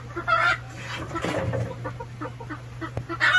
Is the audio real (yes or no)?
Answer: yes